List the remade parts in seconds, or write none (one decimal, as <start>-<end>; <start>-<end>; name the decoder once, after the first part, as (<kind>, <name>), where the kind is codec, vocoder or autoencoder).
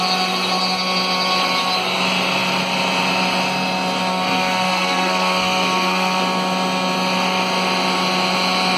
4.1-6.2 (codec, SNAC)